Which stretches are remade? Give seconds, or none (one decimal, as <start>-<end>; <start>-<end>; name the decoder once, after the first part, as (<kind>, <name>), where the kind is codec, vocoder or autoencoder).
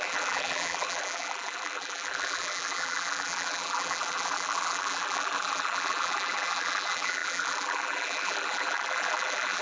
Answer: 0.0-9.6 (vocoder, BigVGAN v2)